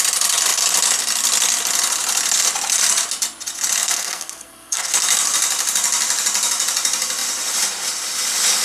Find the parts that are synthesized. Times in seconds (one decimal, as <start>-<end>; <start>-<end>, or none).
3.8-4.9